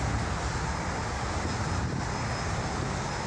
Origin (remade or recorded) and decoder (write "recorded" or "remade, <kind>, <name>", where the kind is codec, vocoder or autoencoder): recorded